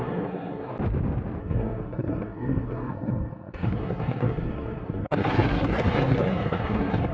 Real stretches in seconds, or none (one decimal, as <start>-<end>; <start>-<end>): 0.7-1.4